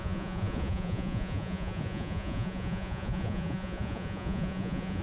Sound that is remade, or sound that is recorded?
remade